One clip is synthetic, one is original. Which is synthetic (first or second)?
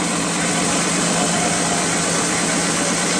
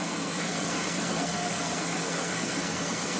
second